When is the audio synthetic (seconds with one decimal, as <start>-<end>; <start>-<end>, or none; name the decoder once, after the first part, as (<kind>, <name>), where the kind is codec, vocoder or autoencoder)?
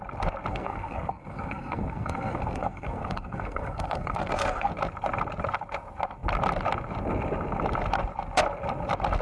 0.5-4.7 (codec, SNAC)